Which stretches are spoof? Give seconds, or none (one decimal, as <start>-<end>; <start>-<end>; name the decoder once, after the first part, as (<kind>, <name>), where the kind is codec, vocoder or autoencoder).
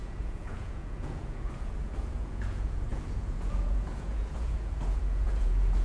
0.0-5.8 (vocoder, Vocos)